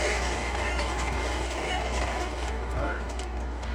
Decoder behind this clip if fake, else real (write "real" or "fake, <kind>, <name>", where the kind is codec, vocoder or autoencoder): fake, codec, DAC